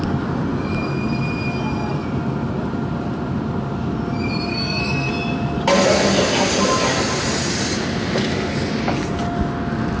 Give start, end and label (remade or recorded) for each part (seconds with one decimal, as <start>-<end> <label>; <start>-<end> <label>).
0.0-4.5 recorded; 4.5-5.1 remade; 5.1-10.0 recorded